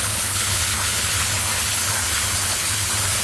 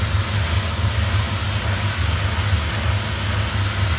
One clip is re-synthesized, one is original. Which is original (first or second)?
second